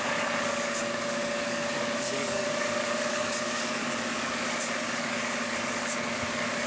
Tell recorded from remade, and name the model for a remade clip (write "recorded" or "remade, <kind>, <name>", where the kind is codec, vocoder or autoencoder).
remade, codec, DAC